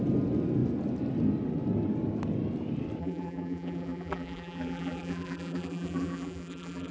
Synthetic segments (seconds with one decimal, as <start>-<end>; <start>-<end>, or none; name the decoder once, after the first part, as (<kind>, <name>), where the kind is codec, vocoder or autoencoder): 3.0-6.9 (vocoder, BigVGAN v2)